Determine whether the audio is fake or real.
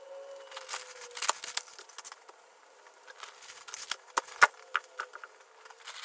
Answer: real